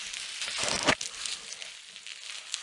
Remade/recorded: recorded